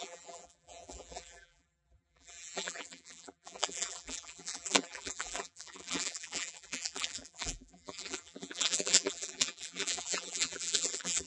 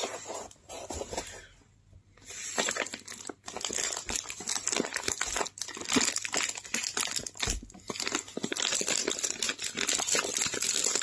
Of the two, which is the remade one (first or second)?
first